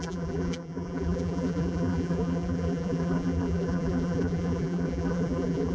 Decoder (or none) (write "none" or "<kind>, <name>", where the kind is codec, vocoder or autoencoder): vocoder, BigVGAN v2